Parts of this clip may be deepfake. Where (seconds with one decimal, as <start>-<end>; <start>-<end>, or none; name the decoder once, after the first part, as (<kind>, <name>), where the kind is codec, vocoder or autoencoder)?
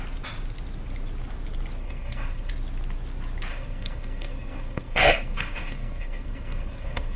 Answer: 1.8-2.5 (codec, SNAC); 3.5-7.2